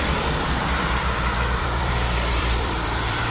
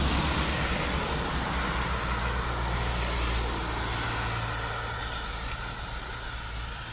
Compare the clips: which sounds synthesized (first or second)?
first